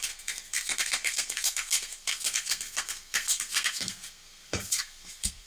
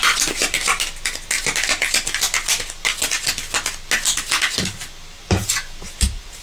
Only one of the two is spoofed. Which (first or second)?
first